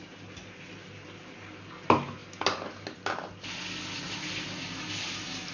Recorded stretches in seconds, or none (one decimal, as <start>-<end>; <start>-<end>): 0.0-5.5